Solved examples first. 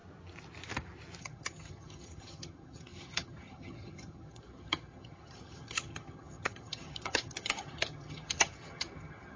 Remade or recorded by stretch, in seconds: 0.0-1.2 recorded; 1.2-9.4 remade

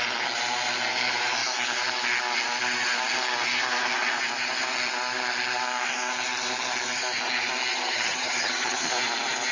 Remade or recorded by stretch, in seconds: 0.0-7.7 recorded; 7.7-8.9 remade; 8.9-9.5 recorded